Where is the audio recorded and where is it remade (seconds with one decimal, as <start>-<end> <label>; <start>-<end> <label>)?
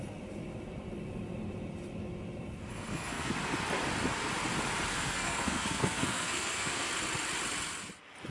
0.0-2.7 recorded; 2.7-3.3 remade; 3.3-4.9 recorded; 4.9-6.9 remade; 6.9-8.3 recorded